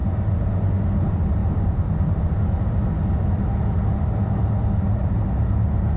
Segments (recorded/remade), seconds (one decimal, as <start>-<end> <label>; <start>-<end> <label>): 0.0-1.4 recorded; 1.4-2.4 remade; 2.4-5.0 recorded; 5.0-6.0 remade